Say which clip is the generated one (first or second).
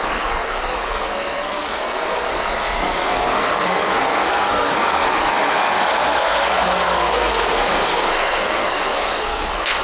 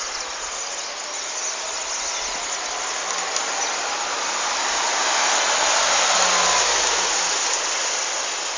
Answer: first